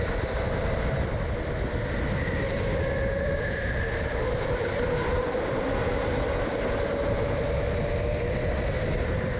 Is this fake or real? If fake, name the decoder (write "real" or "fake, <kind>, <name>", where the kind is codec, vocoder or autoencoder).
real